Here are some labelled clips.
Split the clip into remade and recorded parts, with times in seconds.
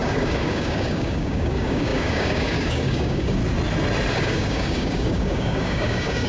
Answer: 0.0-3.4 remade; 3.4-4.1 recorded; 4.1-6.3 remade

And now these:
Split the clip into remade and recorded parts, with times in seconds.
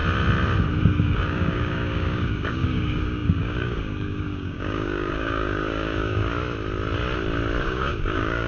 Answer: 0.0-0.8 recorded; 0.8-6.3 remade; 6.3-7.6 recorded; 7.6-8.5 remade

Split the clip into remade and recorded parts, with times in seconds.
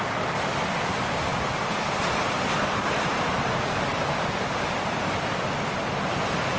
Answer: 0.0-6.6 recorded